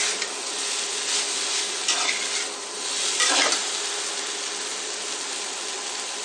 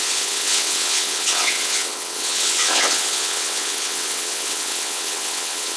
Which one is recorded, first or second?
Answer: first